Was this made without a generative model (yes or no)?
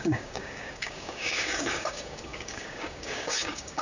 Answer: no